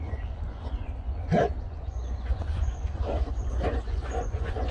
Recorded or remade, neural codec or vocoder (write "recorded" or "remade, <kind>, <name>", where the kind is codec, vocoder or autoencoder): remade, vocoder, Vocos